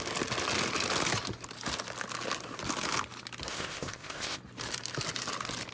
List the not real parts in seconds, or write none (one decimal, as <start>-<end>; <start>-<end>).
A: 3.5-4.4